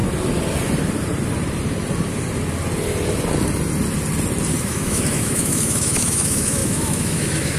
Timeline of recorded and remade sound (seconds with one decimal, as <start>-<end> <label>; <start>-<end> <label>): 0.0-4.6 recorded; 4.6-7.6 remade